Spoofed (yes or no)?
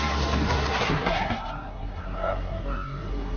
yes